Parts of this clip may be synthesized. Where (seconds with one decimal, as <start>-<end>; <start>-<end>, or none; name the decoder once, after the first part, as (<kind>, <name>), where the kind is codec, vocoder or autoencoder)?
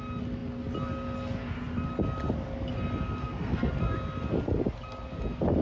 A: 3.2-3.7 (codec, SNAC)